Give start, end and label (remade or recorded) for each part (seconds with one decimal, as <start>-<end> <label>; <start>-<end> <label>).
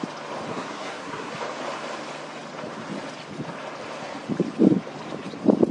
0.0-0.5 recorded; 0.5-1.3 remade; 1.3-5.7 recorded